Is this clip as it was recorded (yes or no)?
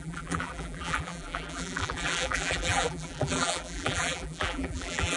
no